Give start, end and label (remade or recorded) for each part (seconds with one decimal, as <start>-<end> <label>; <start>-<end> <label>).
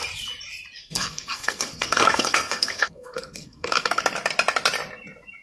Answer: 0.0-0.8 recorded; 0.8-4.0 remade; 4.0-5.4 recorded